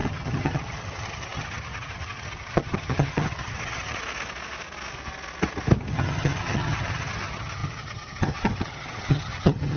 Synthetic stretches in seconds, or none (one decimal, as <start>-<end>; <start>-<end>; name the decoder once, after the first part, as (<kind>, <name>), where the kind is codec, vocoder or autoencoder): 0.0-4.0 (vocoder, HiFi-GAN); 5.9-9.8